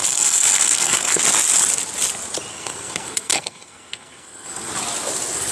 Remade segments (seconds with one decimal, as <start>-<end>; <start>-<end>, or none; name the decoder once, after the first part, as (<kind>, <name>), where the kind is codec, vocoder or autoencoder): 0.0-1.2 (codec, SNAC); 2.5-4.7